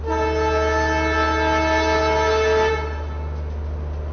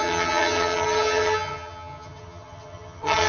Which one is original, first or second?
first